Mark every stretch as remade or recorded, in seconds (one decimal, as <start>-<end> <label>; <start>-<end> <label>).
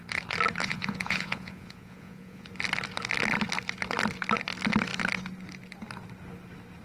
0.0-0.6 recorded; 0.6-2.5 remade; 2.5-6.8 recorded